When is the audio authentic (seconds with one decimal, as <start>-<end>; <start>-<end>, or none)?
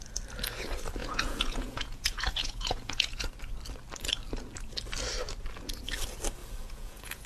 0.0-1.0; 3.3-6.4